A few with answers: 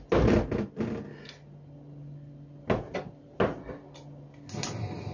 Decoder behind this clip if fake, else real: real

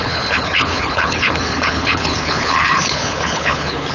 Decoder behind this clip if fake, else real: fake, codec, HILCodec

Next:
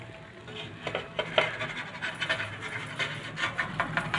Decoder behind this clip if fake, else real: real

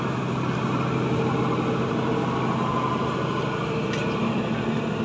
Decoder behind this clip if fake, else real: real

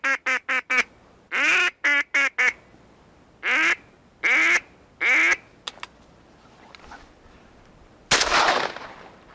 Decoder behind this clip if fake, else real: real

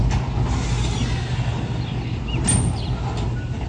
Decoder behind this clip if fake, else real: real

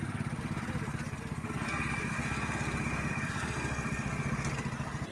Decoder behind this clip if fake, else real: real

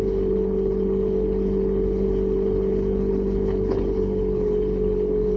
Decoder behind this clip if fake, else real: fake, codec, HILCodec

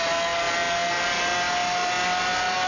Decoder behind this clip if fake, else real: real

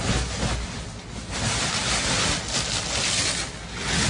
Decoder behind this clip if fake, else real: real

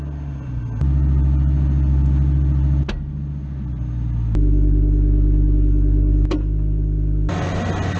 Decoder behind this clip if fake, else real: real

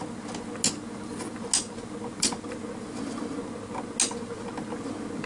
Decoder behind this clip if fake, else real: real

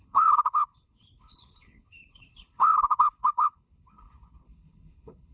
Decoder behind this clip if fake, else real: fake, codec, HILCodec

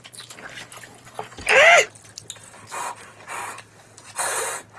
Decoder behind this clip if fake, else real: real